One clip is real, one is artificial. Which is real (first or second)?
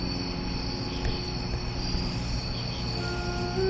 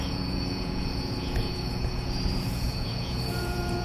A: first